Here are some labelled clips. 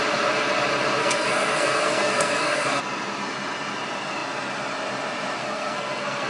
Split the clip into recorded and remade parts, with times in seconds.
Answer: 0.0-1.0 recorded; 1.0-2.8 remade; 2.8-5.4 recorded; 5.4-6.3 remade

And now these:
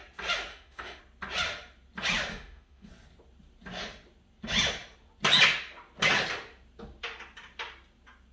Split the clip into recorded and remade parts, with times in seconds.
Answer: 0.0-0.5 recorded; 0.5-1.0 remade; 1.0-2.3 recorded; 2.3-2.9 remade; 2.9-8.3 recorded

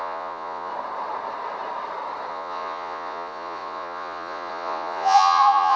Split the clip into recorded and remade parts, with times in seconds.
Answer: 0.0-0.7 remade; 0.7-2.3 recorded; 2.3-5.8 remade

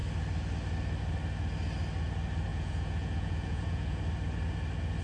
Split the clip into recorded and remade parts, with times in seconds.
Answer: 0.0-2.5 recorded; 2.5-4.0 remade; 4.0-5.0 recorded